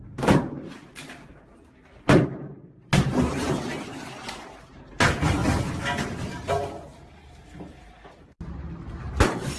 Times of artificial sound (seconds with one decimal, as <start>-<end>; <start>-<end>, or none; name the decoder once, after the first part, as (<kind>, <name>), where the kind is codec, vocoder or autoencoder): 0.0-3.7 (vocoder, BigVGAN v2); 4.7-5.4; 9.2-9.6